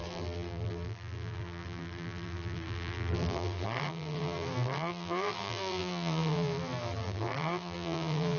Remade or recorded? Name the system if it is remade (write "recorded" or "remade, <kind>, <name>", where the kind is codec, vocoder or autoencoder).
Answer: remade, vocoder, BigVGAN v2